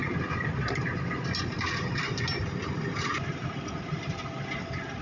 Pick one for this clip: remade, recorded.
recorded